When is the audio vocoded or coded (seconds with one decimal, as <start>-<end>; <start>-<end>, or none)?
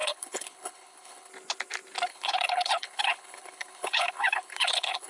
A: 0.0-1.3; 2.1-5.1